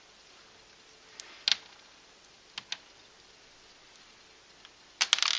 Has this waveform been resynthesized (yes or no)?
no